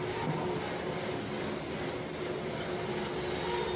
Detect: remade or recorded recorded